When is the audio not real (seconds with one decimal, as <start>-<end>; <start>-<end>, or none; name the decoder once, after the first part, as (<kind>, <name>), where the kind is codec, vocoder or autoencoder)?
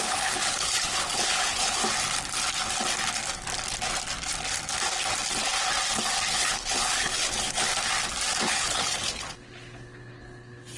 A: 0.0-1.8 (codec, HILCodec); 6.3-7.7; 8.4-10.8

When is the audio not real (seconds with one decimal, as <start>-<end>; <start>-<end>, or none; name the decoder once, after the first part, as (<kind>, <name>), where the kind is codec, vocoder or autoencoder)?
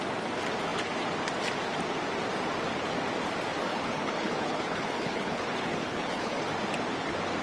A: 3.7-6.4 (codec, HILCodec)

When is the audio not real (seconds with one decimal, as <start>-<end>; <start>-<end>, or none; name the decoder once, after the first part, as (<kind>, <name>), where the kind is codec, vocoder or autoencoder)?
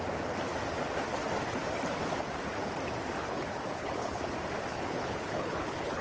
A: 3.2-4.2 (codec, HILCodec); 4.7-6.0